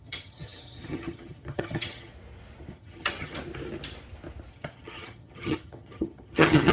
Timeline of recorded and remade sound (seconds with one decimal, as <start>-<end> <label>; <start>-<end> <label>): 0.0-2.1 remade; 2.1-2.7 recorded; 2.7-3.4 remade; 3.4-4.5 recorded; 4.5-6.7 remade